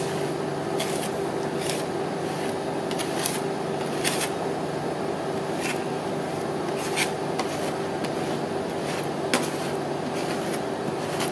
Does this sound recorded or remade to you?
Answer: recorded